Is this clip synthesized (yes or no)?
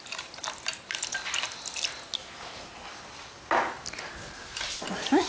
no